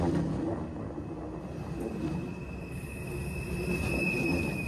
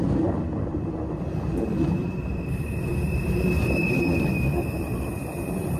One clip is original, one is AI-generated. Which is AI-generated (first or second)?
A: second